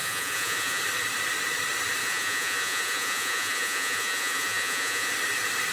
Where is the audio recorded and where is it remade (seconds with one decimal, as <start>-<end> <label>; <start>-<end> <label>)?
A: 0.0-0.8 remade; 0.8-2.0 recorded; 2.0-5.1 remade; 5.1-5.7 recorded